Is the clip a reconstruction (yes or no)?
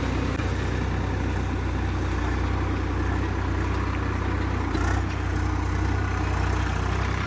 no